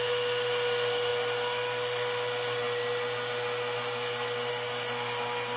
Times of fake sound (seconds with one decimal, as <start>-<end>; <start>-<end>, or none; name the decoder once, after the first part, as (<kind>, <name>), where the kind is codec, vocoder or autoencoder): none